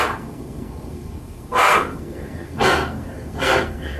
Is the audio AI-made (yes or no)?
yes